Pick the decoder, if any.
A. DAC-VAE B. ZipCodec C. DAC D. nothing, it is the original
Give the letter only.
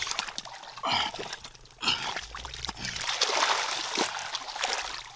D